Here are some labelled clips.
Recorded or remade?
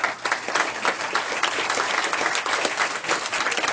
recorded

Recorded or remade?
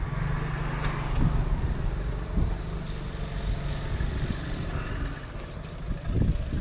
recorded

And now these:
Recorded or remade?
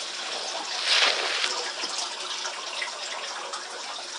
recorded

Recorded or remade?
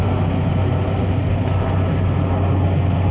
recorded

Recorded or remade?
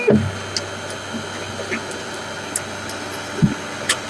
recorded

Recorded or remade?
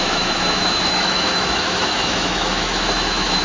remade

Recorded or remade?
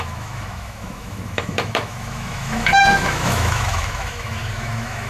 remade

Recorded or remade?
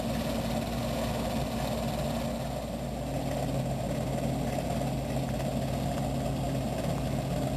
recorded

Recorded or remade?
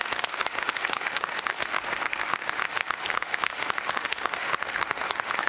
remade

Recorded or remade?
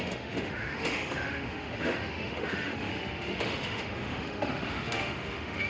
remade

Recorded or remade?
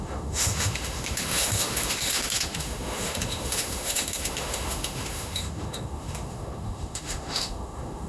remade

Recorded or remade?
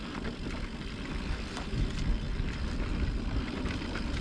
recorded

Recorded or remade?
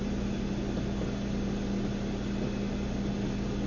recorded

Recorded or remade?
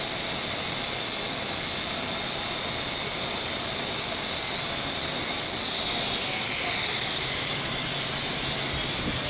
recorded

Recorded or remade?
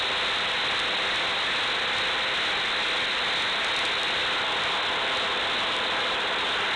recorded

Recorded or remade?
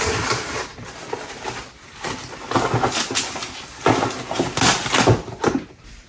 recorded